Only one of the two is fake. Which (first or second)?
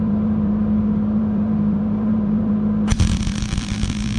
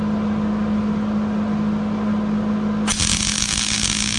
first